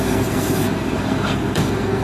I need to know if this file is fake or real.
fake